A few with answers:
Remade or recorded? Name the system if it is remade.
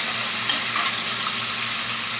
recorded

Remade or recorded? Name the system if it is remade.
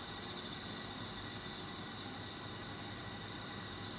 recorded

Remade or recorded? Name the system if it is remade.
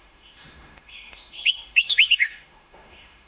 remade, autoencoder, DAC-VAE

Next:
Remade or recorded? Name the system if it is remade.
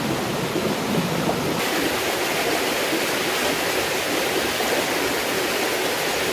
recorded